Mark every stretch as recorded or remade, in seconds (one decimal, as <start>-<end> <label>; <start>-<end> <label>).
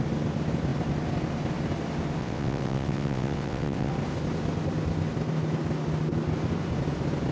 0.0-2.2 recorded; 2.2-3.9 remade; 3.9-7.3 recorded